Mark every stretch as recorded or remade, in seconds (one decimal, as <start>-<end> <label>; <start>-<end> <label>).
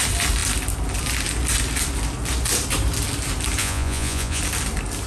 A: 0.0-3.6 recorded; 3.6-4.4 remade; 4.4-5.1 recorded